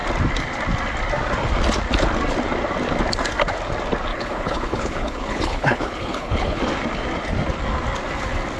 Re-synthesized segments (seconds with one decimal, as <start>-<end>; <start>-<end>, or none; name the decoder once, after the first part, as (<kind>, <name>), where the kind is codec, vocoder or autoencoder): 4.1-6.6 (codec, HILCodec)